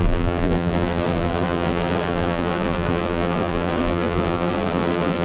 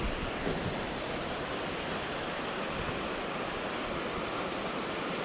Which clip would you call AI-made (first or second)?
first